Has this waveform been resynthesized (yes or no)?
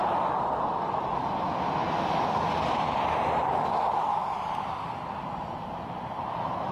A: no